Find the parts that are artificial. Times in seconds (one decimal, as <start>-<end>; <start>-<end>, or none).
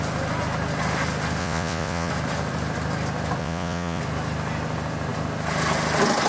1.4-2.1; 3.4-4.0